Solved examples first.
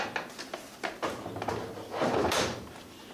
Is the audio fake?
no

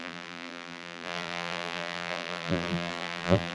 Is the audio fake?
yes